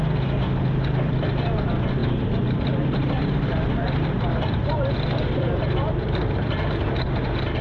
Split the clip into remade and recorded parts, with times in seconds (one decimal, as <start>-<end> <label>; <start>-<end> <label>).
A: 0.0-2.0 recorded; 2.0-6.5 remade; 6.5-7.6 recorded